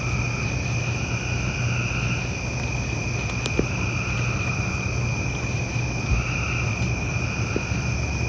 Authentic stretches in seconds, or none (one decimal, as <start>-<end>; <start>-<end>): 0.0-8.3